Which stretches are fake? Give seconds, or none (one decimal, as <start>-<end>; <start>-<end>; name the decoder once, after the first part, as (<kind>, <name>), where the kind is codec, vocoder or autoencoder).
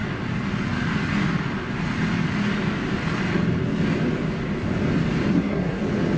5.3-5.8 (codec, SNAC)